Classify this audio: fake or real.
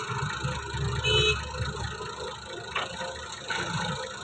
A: real